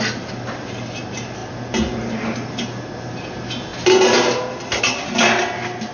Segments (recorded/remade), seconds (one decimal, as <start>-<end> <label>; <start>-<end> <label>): 0.0-5.9 recorded

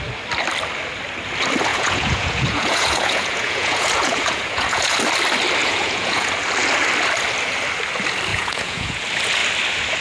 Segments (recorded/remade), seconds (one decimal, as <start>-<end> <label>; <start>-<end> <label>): 0.0-1.7 recorded; 1.7-5.0 remade; 5.0-5.6 recorded; 5.6-6.3 remade; 6.3-8.3 recorded; 8.3-9.0 remade; 9.0-10.0 recorded

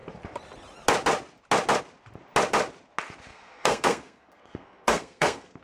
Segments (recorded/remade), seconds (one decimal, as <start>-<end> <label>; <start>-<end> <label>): 0.0-3.3 recorded; 3.3-5.6 remade

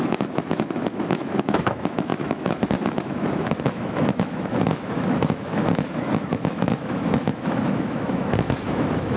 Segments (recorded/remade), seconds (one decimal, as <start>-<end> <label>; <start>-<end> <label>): 0.0-9.2 remade

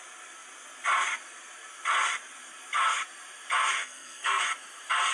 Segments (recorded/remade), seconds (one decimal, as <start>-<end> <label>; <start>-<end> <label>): 0.0-3.8 recorded; 3.8-4.4 remade; 4.4-5.1 recorded